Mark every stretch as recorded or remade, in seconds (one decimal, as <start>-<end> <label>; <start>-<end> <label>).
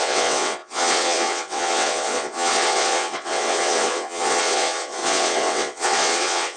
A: 0.0-6.6 remade